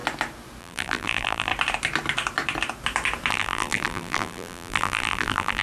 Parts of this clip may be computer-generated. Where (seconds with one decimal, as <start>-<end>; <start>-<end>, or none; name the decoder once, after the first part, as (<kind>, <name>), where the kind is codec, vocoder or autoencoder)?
0.6-1.5 (vocoder, BigVGAN v2); 3.3-5.6